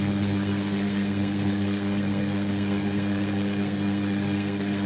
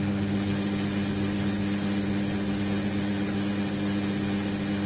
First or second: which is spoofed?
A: first